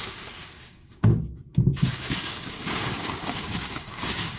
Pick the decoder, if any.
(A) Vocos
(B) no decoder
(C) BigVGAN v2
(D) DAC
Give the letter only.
D